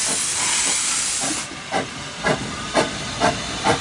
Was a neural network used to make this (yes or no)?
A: no